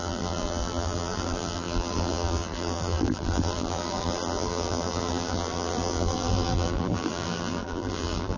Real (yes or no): no